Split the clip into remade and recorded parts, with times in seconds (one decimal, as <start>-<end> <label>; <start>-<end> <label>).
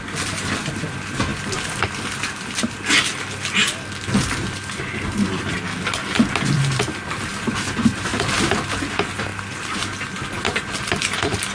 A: 0.0-11.5 recorded